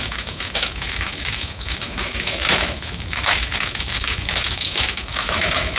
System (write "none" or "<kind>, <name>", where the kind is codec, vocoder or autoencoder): autoencoder, DAC-VAE